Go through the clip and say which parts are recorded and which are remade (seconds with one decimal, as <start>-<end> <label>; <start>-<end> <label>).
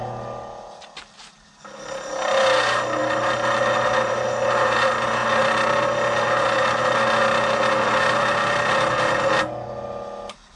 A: 0.0-10.6 recorded